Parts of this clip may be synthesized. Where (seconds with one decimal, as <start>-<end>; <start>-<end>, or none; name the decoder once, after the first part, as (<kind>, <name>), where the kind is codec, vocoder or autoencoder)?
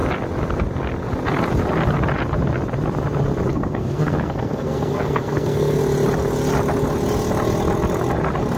3.5-5.8 (codec, SNAC)